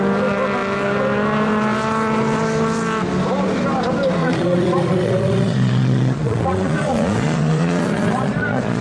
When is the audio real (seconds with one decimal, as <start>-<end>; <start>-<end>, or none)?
0.0-4.2